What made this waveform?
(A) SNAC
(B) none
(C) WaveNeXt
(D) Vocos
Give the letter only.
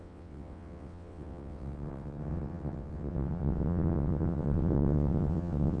C